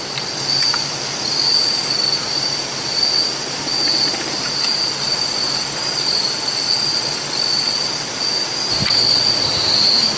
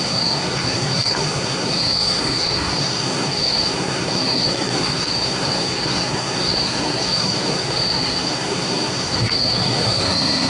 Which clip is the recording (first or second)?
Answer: first